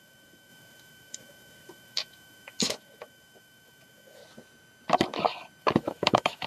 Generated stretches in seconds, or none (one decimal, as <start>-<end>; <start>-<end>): 0.0-4.2; 5.6-6.5